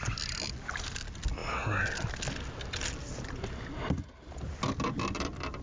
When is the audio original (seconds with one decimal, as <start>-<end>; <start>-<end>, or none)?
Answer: 0.0-5.6